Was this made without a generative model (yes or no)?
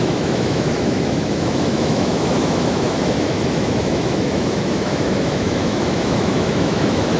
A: no